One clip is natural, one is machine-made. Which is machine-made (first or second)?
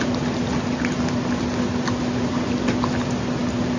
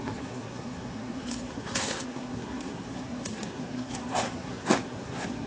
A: second